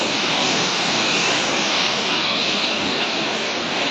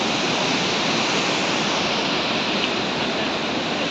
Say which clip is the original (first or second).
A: second